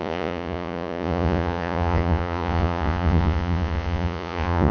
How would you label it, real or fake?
fake